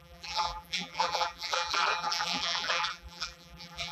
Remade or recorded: remade